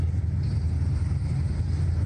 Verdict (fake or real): real